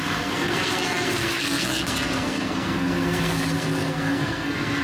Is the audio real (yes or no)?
no